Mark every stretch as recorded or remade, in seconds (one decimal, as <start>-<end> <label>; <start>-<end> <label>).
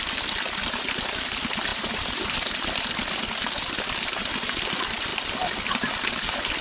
0.0-1.7 recorded; 1.7-3.7 remade; 3.7-5.1 recorded; 5.1-6.6 remade